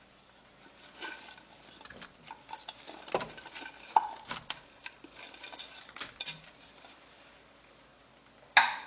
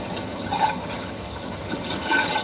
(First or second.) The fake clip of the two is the second